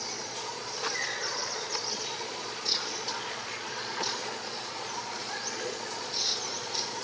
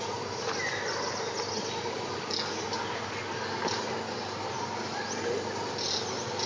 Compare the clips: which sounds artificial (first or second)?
first